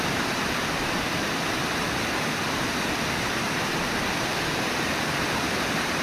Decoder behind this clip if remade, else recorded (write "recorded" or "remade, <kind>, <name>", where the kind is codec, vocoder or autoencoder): remade, vocoder, BigVGAN v2